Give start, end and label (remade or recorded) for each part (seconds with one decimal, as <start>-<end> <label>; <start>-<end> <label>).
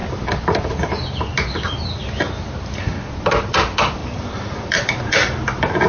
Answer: 0.0-3.5 recorded; 3.5-5.9 remade